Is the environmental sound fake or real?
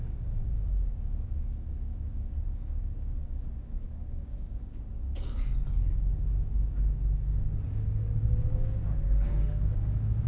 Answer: fake